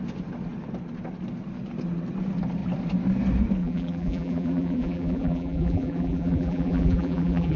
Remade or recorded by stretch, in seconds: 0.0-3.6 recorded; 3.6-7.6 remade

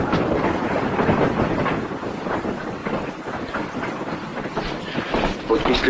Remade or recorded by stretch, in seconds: 0.0-5.9 recorded

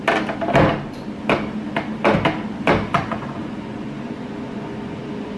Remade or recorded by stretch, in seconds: 0.0-2.9 recorded; 2.9-5.4 remade

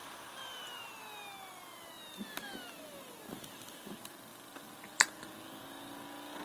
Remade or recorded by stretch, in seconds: 0.0-4.3 recorded; 4.3-5.3 remade; 5.3-6.4 recorded

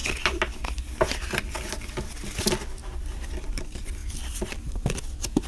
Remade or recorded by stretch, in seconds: 0.0-5.5 recorded

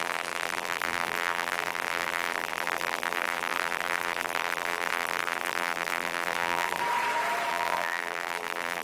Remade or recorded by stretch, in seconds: 0.0-6.8 remade; 6.8-7.5 recorded; 7.5-8.8 remade

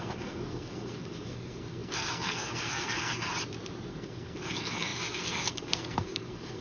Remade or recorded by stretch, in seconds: 0.0-3.3 remade; 3.3-3.9 recorded; 3.9-6.6 remade

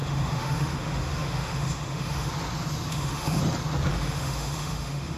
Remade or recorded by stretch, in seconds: 0.0-2.3 remade; 2.3-2.9 recorded; 2.9-3.4 remade; 3.4-3.9 recorded; 3.9-5.2 remade